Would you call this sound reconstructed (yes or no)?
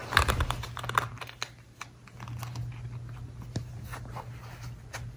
no